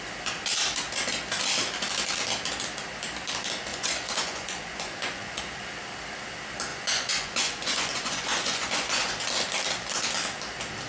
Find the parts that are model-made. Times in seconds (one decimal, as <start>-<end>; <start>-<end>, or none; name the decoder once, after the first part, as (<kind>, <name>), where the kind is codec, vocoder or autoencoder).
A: 3.7-5.4 (vocoder, Vocos); 6.7-9.1